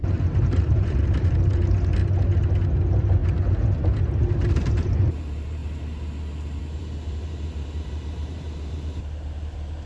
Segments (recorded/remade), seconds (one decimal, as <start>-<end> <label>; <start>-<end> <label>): 0.0-2.0 remade; 2.0-2.6 recorded; 2.6-3.2 remade; 3.2-4.5 recorded; 4.5-5.6 remade; 5.6-6.6 recorded; 6.6-9.9 remade